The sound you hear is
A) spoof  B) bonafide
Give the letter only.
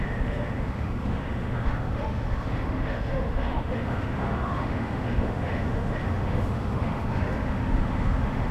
A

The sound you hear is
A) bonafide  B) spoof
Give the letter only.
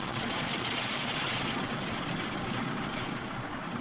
B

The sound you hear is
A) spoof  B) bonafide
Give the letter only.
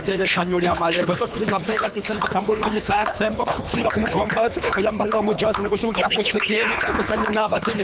A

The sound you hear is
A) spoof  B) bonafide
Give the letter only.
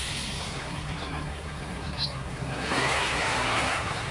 A